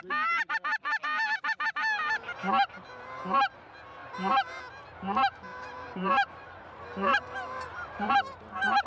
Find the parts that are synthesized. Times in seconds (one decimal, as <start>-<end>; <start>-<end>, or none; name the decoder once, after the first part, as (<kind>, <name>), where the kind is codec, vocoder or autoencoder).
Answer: 4.0-4.6 (vocoder, BigVGAN v2); 5.5-8.9